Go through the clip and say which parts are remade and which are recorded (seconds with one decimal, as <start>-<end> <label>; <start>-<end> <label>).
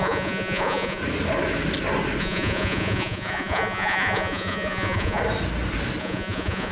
0.0-1.0 remade; 1.0-2.2 recorded; 2.2-5.2 remade; 5.2-6.0 recorded; 6.0-6.7 remade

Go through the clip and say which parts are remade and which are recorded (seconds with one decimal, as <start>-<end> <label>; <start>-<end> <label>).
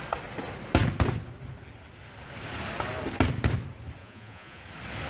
0.0-4.0 recorded; 4.0-4.6 remade; 4.6-5.1 recorded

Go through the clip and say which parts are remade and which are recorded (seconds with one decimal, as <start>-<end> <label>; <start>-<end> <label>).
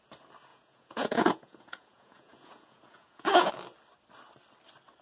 0.0-0.5 recorded; 0.5-3.5 remade; 3.5-5.0 recorded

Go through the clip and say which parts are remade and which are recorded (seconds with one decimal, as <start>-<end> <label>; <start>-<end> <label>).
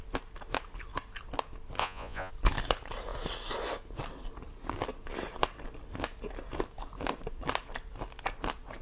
0.0-1.8 recorded; 1.8-2.3 remade; 2.3-8.8 recorded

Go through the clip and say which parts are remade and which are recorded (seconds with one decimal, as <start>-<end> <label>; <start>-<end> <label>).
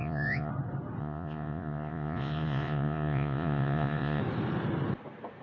0.0-0.5 remade; 0.5-1.0 recorded; 1.0-4.2 remade; 4.2-5.4 recorded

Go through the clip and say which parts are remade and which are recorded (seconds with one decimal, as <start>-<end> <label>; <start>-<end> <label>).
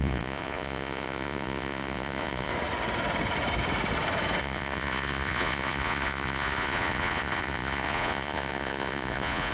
0.0-2.5 remade; 2.5-4.4 recorded; 4.4-9.5 remade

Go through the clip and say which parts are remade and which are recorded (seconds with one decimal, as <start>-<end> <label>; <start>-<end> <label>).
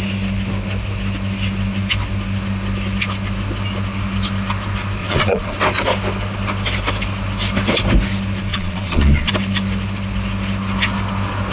0.0-5.0 recorded; 5.0-5.6 remade; 5.6-8.5 recorded; 8.5-9.3 remade; 9.3-11.5 recorded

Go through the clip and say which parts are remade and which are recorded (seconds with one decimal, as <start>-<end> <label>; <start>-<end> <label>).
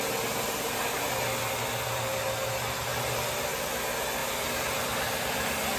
0.0-5.8 recorded